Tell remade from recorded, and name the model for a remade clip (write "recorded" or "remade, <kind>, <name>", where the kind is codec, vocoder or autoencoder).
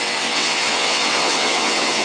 remade, vocoder, WaveNeXt